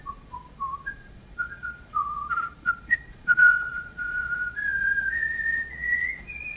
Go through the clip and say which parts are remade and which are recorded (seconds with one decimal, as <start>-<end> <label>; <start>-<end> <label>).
0.0-6.6 remade